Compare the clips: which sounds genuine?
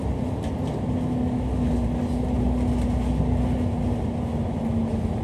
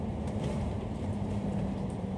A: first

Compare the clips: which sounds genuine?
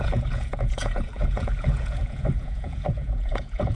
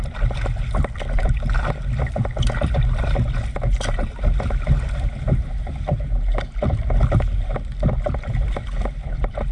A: second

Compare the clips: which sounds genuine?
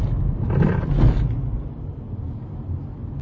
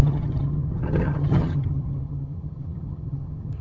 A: first